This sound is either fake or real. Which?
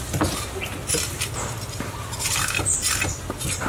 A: real